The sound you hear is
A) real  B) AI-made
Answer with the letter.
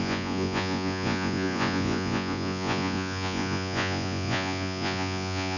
B